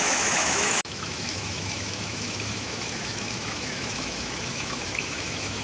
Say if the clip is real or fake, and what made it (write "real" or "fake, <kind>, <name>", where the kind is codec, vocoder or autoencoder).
fake, autoencoder, DAC-VAE